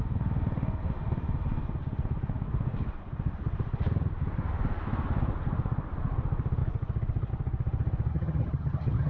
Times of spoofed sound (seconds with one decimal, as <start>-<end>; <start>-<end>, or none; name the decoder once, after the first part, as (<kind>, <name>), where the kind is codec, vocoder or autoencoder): 8.1-9.1 (vocoder, HiFi-GAN)

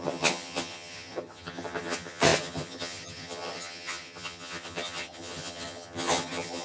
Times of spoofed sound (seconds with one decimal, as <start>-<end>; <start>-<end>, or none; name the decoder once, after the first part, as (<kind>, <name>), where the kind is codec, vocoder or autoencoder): 0.0-6.6 (vocoder, HiFi-GAN)

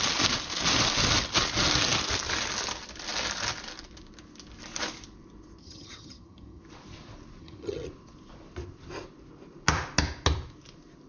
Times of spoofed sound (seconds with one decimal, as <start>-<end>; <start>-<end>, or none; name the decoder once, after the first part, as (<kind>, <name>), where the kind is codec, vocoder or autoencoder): 5.6-6.6 (vocoder, HiFi-GAN); 7.4-7.9

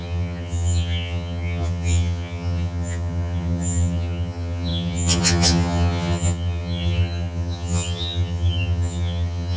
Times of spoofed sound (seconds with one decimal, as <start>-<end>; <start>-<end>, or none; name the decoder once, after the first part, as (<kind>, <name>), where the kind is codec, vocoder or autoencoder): 0.0-9.6 (vocoder, HiFi-GAN)